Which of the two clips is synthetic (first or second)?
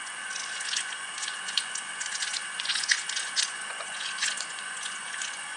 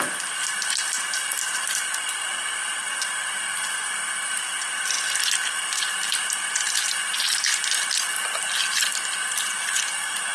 first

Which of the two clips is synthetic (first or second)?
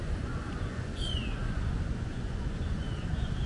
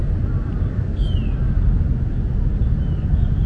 first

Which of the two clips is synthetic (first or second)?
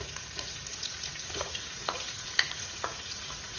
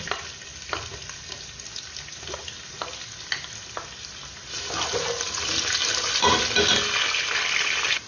first